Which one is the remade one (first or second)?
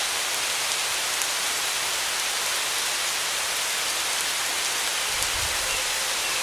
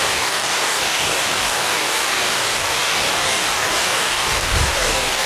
second